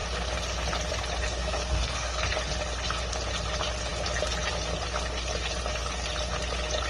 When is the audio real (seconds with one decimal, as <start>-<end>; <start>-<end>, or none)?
0.0-1.4; 2.2-6.9